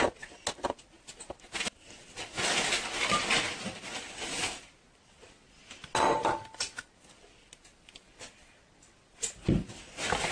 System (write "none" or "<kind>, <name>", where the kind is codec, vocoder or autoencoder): none